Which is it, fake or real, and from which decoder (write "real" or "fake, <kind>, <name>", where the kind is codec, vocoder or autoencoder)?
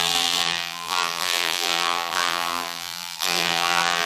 fake, vocoder, BigVGAN v2